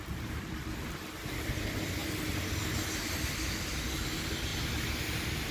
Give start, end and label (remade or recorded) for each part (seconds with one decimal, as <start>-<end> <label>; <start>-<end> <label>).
0.0-5.5 recorded